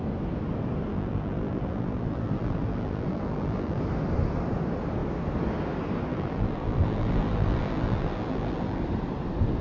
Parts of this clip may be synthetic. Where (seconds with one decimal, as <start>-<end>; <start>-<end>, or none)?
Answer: 0.9-3.8; 6.1-8.8